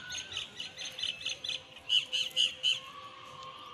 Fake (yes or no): no